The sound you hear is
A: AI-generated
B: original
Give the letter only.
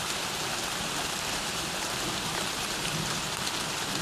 B